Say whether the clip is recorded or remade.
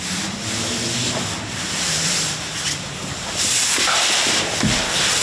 remade